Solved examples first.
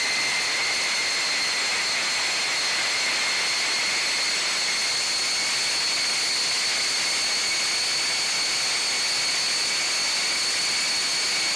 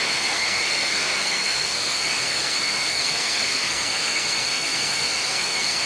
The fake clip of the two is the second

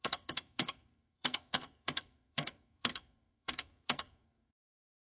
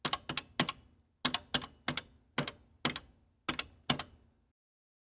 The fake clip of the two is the first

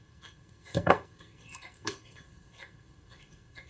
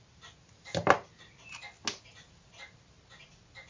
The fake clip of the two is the first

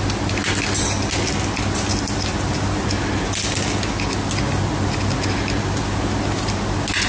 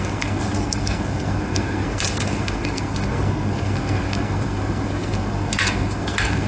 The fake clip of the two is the second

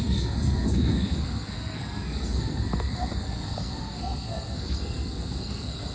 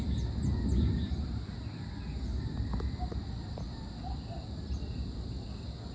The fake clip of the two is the first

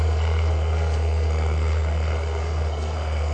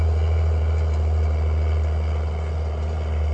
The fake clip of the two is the first